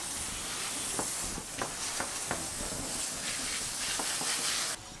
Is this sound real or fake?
real